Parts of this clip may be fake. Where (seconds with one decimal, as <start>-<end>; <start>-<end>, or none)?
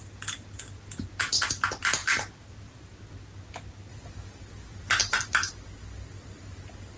2.0-3.2; 3.9-5.5